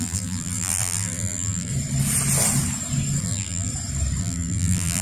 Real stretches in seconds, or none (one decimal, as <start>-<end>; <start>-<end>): 1.7-3.2; 3.7-4.2